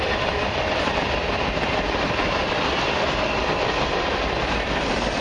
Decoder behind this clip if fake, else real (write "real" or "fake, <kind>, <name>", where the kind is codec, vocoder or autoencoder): fake, vocoder, BigVGAN v2